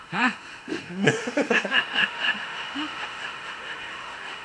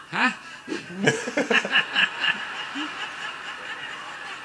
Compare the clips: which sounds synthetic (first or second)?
first